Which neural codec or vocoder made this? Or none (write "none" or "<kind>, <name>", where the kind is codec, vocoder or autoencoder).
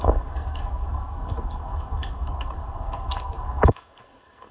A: codec, SNAC